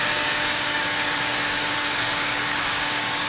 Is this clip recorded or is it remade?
remade